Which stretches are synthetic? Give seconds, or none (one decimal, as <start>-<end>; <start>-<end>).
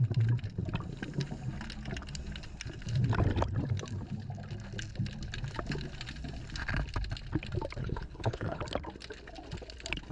7.8-8.6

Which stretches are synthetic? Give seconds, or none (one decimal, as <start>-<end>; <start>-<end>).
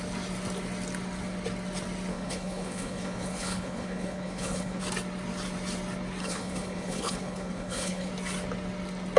2.1-4.8; 6.2-8.1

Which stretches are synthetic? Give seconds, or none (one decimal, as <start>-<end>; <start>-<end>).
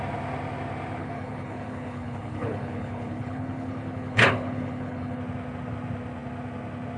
1.0-5.2